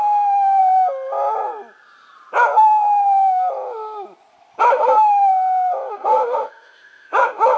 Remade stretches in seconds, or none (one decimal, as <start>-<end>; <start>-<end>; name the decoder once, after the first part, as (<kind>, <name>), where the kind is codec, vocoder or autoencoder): 0.0-0.6 (autoencoder, DAC-VAE); 4.6-5.3; 5.9-7.6